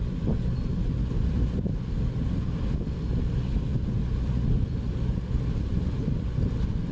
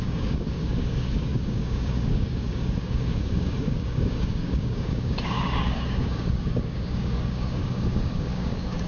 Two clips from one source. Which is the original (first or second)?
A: first